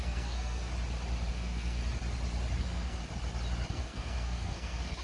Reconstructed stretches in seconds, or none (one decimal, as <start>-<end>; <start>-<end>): 0.0-0.7; 1.3-1.8; 2.6-3.0; 3.7-5.0